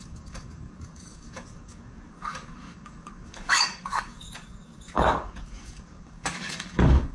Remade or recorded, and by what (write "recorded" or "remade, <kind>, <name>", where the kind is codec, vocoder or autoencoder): remade, codec, DAC